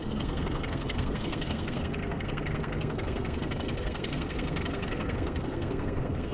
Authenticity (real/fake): fake